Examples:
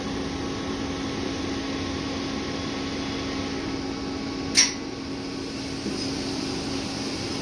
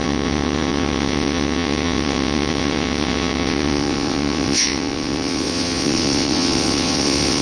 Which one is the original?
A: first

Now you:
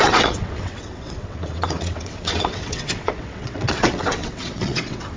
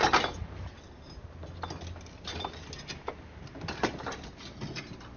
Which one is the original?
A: second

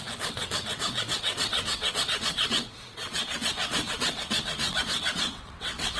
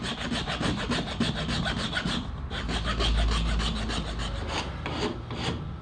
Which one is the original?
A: second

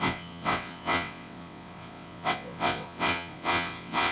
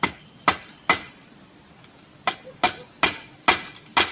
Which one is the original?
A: second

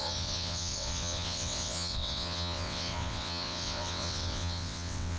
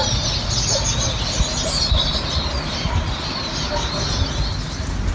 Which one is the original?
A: second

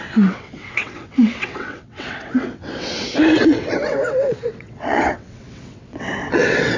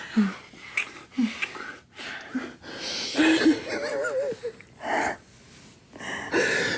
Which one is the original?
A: second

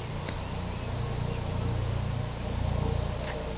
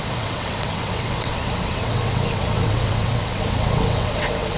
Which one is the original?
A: first